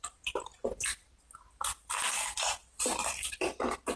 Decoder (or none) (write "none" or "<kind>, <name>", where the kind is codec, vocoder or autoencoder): vocoder, BigVGAN v2